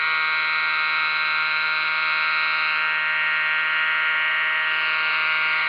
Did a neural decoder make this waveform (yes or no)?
no